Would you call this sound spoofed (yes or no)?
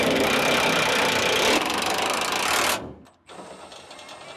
no